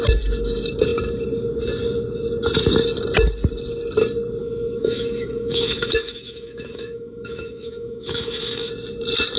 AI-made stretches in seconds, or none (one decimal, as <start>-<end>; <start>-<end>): 4.4-8.7